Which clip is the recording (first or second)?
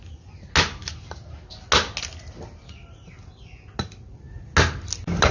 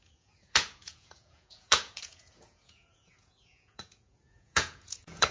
first